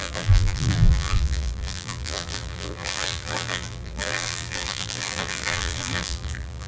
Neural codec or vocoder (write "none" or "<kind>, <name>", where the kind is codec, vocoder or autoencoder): vocoder, BigVGAN v2